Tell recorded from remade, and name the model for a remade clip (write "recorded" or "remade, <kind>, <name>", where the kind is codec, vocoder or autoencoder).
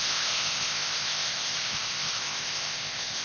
remade, codec, ZipCodec